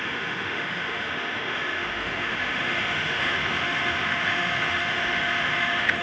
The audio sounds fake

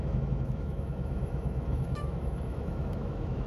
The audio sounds fake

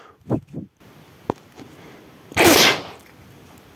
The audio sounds real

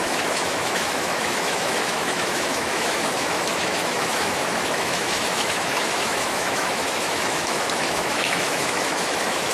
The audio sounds fake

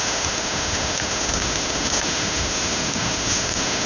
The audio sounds fake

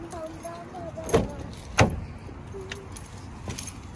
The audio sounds real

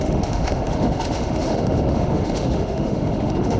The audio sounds fake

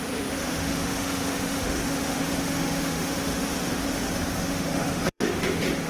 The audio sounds fake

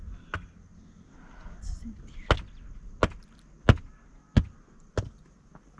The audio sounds real